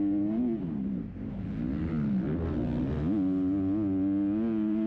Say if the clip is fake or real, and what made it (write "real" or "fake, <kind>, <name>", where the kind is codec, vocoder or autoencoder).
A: real